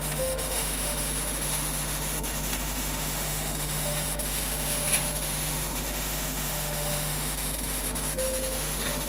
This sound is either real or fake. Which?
fake